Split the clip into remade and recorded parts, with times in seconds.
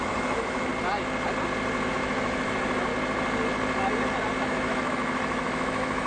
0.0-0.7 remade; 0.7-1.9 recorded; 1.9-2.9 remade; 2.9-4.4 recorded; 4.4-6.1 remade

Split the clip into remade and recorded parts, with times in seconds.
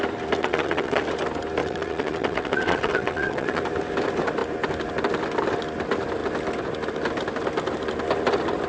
0.0-0.4 recorded; 0.4-1.0 remade; 1.0-1.6 recorded; 1.6-3.6 remade; 3.6-8.7 recorded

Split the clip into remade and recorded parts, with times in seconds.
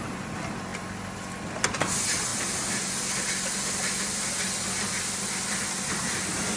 0.0-2.3 recorded; 2.3-4.4 remade; 4.4-6.6 recorded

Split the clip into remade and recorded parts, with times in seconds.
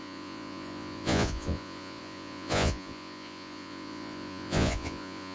0.0-5.3 remade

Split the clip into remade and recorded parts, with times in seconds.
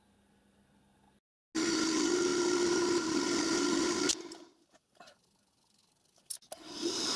0.0-7.2 recorded